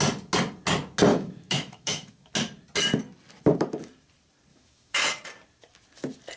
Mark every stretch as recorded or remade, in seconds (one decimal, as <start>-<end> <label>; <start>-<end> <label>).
0.0-1.1 recorded; 1.1-2.3 remade; 2.3-4.5 recorded; 4.5-5.1 remade; 5.1-6.4 recorded